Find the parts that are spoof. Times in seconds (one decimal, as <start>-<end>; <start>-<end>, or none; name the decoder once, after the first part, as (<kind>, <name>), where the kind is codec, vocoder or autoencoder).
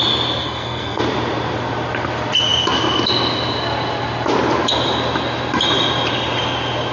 0.4-1.0 (codec, SNAC)